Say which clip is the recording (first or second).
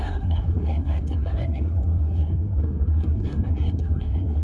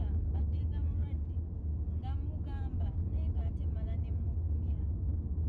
second